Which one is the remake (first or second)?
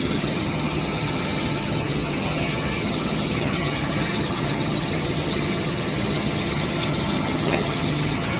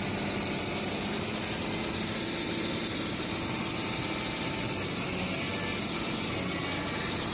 first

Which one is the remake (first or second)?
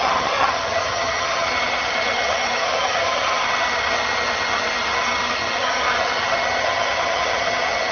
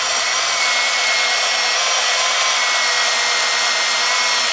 first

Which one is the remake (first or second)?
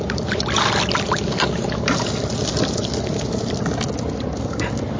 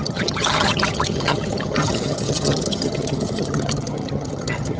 second